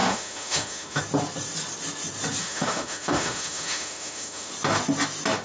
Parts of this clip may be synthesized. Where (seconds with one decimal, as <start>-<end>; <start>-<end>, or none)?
0.0-1.0; 2.4-4.5